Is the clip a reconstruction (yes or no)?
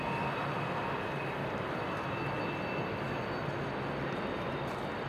no